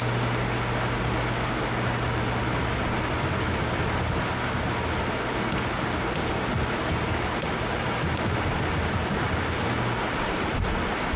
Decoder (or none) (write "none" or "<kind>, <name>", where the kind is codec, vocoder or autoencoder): none